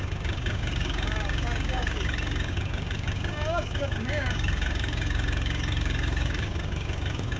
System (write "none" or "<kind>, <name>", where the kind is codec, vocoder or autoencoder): codec, DAC